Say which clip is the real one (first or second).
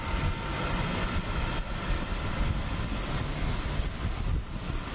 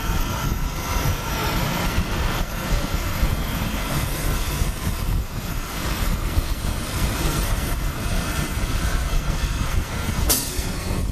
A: first